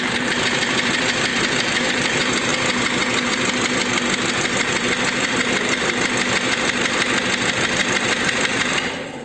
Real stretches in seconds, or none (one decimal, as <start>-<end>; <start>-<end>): 2.5-3.3